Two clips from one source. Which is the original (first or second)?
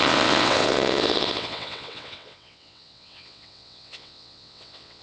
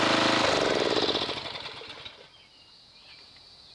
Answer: second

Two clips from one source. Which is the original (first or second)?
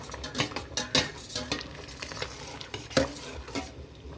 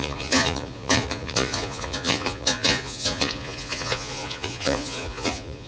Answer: first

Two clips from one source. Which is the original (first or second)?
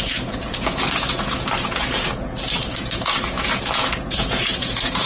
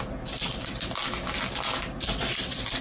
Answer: second